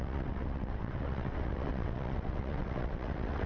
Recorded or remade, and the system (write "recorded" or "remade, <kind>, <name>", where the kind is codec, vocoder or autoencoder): remade, vocoder, WaveNeXt